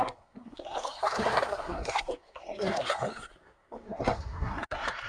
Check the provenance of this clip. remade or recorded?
remade